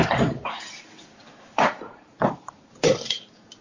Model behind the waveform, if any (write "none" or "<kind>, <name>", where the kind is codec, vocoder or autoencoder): vocoder, BigVGAN v2